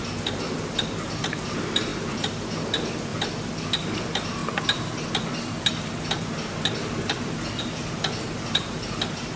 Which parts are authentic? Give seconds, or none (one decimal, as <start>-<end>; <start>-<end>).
4.4-7.6